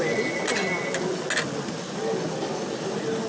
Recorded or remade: recorded